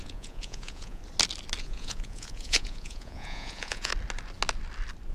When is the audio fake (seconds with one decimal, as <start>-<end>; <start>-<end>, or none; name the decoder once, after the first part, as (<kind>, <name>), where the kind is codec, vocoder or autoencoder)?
0.0-1.0 (vocoder, Vocos); 1.6-3.9